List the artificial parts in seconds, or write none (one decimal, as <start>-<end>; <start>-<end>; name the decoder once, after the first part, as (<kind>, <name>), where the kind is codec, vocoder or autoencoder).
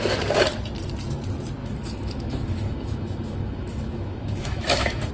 1.6-5.1 (autoencoder, DAC-VAE)